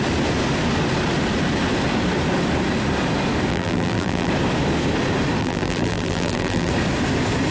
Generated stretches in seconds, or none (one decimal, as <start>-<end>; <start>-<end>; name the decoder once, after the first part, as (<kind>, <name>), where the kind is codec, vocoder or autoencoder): 3.5-4.3 (vocoder, BigVGAN v2); 5.4-6.7